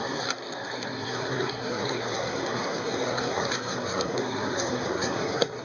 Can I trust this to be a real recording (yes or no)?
no